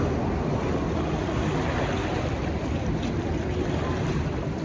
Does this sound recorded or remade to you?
recorded